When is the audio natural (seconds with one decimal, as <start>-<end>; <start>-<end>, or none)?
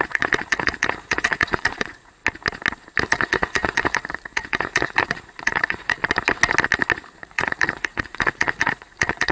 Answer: 2.2-3.0; 6.0-7.2